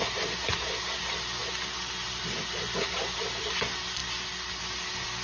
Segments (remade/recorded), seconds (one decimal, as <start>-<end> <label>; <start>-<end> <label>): 0.0-5.2 recorded

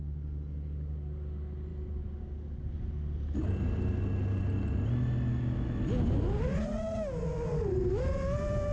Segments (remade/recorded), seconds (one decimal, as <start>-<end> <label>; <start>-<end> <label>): 0.0-5.3 recorded; 5.3-5.8 remade; 5.8-8.7 recorded

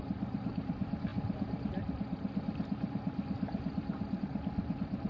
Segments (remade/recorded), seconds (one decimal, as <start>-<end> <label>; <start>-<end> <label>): 0.0-5.1 recorded

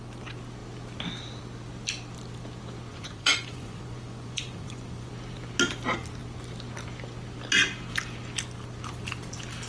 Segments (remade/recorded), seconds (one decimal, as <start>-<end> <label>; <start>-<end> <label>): 0.0-2.9 recorded; 2.9-5.1 remade; 5.1-9.7 recorded

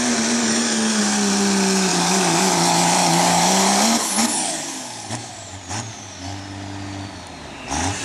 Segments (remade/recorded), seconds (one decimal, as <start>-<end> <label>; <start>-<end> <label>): 0.0-0.4 recorded; 0.4-1.0 remade; 1.0-1.9 recorded; 1.9-5.3 remade; 5.3-5.9 recorded; 5.9-6.4 remade; 6.4-8.0 recorded